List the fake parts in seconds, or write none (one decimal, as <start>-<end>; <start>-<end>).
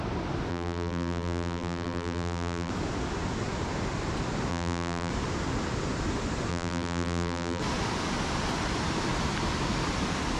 0.5-2.7; 4.5-5.1; 6.5-7.6